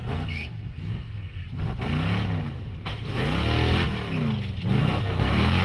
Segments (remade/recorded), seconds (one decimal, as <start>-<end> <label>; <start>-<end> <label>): 0.0-1.4 remade; 1.4-4.8 recorded; 4.8-5.6 remade